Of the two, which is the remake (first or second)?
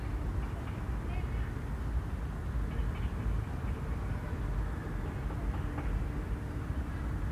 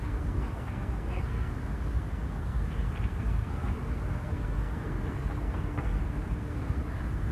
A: second